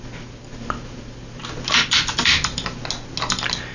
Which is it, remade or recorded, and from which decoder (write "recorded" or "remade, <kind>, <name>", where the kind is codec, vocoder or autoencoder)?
recorded